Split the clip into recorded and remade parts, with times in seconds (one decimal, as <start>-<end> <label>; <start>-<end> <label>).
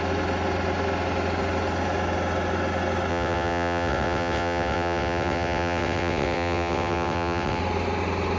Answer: 0.0-3.1 recorded; 3.1-7.6 remade; 7.6-8.4 recorded